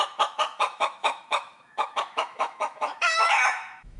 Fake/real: fake